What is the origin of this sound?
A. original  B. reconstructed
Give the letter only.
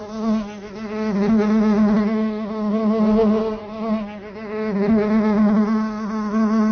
A